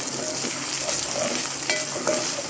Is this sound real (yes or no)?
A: yes